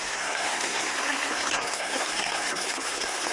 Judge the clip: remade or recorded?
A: remade